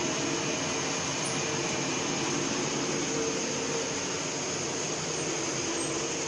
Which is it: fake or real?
real